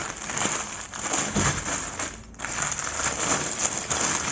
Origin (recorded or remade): recorded